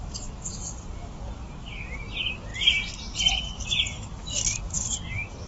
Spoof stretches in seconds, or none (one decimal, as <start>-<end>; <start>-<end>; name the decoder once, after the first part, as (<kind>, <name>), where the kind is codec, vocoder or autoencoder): 4.2-4.9 (autoencoder, DAC-VAE)